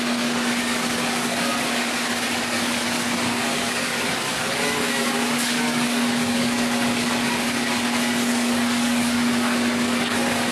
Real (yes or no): no